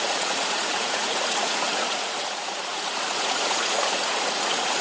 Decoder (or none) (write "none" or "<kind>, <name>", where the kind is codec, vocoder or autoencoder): vocoder, Vocos